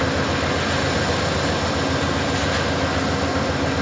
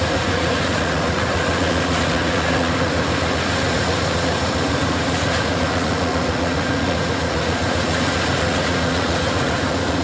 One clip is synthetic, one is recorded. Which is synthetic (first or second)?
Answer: second